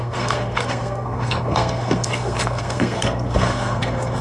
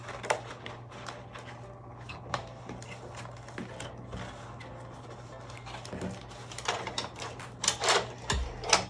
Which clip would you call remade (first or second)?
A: first